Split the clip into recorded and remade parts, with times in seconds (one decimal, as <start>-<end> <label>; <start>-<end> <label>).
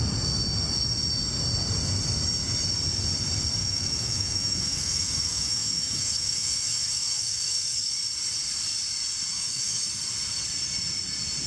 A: 0.0-3.6 recorded; 3.6-7.9 remade; 7.9-9.3 recorded; 9.3-9.9 remade; 9.9-11.5 recorded